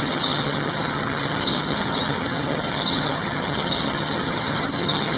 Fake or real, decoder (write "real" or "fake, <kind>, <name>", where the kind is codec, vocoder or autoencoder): fake, vocoder, HiFi-GAN